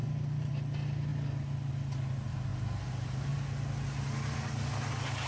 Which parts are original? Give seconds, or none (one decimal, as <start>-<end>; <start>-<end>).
0.0-5.3